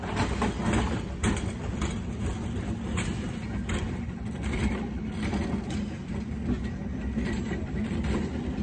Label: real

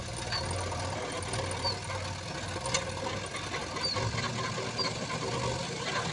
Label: real